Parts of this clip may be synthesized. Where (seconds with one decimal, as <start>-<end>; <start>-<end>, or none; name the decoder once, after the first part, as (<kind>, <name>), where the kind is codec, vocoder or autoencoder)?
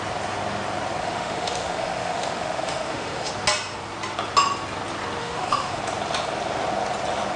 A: 1.0-3.3 (autoencoder, DAC-VAE); 5.2-5.8